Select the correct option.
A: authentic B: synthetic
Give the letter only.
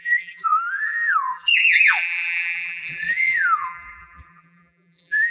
B